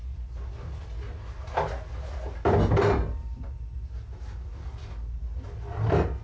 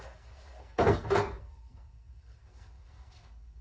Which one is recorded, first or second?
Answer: first